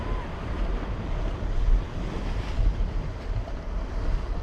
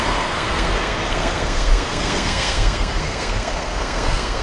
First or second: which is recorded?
first